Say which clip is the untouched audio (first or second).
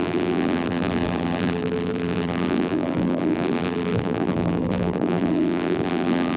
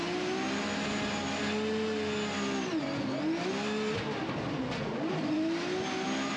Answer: second